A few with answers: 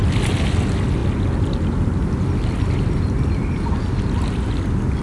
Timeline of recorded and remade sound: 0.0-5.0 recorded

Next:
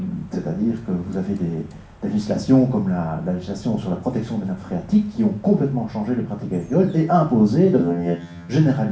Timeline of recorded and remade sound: 0.0-7.8 recorded; 7.8-8.5 remade; 8.5-8.9 recorded

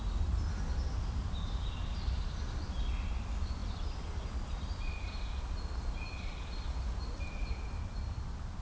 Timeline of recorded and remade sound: 0.0-8.6 recorded

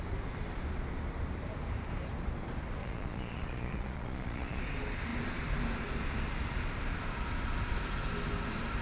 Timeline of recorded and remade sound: 0.0-2.8 recorded; 2.8-4.6 remade; 4.6-8.8 recorded